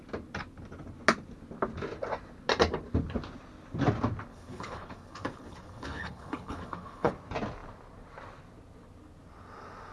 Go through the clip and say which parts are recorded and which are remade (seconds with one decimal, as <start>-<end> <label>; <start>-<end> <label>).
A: 0.0-4.3 recorded; 4.3-7.1 remade; 7.1-9.9 recorded